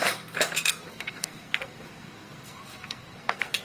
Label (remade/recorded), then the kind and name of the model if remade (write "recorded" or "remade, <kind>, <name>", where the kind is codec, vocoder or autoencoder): remade, codec, SNAC